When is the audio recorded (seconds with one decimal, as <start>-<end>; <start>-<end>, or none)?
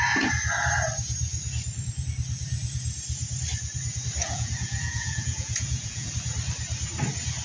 0.0-4.2; 6.1-7.4